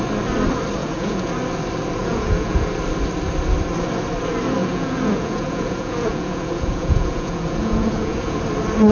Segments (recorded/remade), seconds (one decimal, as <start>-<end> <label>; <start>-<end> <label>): 0.0-0.8 recorded; 0.8-1.3 remade; 1.3-2.0 recorded; 2.0-2.7 remade; 2.7-4.6 recorded; 4.6-8.4 remade; 8.4-8.9 recorded